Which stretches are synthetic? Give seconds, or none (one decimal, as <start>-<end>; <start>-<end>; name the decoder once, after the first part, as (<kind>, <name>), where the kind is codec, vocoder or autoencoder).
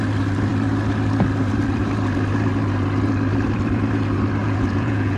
4.4-5.2 (vocoder, Vocos)